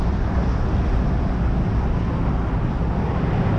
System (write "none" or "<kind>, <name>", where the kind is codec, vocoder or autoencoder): none